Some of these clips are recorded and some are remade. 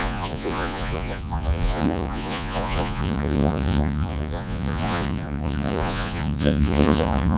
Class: remade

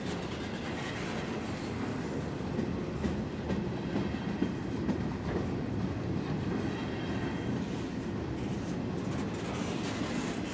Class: recorded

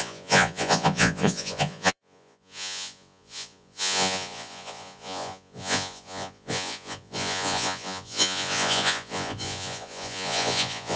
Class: remade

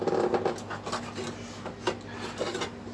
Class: recorded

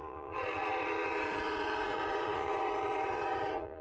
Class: remade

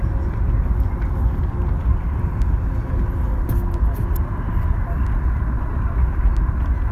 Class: recorded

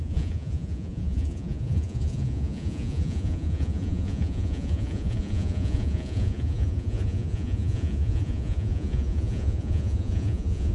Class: remade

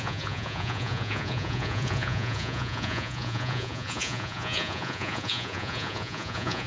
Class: remade